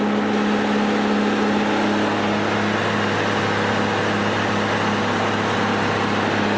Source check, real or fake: real